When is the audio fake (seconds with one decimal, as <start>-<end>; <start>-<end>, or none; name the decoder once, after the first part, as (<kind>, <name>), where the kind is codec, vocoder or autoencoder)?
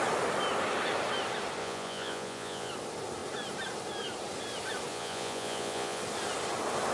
1.6-2.7 (vocoder, Vocos); 4.9-6.0